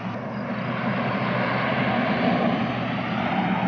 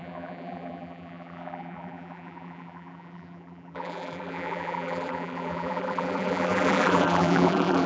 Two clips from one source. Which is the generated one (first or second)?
second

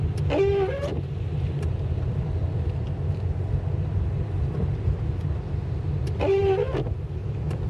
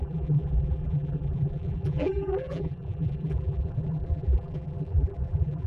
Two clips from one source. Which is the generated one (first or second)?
second